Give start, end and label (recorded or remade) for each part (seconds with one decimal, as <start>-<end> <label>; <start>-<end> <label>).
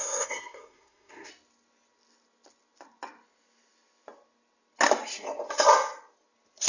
0.0-1.3 remade; 1.3-6.7 recorded